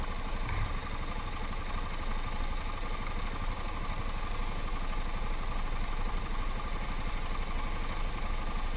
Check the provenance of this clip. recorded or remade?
recorded